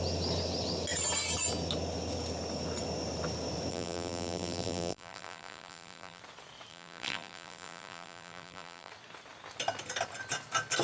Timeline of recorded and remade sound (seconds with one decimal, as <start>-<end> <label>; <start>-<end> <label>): 0.0-3.7 recorded; 3.7-6.2 remade; 6.2-6.7 recorded; 6.7-8.9 remade; 8.9-10.8 recorded